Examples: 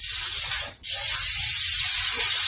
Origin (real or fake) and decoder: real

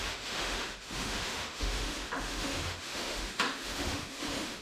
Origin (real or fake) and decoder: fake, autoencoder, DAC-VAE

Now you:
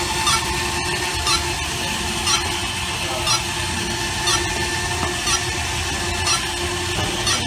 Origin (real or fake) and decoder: real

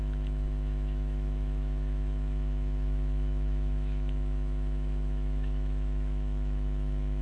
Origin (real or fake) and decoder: fake, autoencoder, DAC-VAE